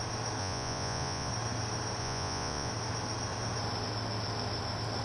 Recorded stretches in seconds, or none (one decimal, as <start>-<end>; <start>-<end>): 0.0-0.4; 1.3-2.0; 2.7-5.0